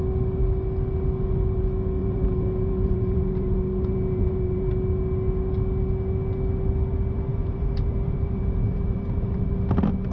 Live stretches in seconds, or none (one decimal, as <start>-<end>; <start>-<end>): 0.0-2.0; 4.7-7.3; 9.5-10.1